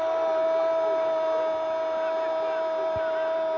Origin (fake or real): real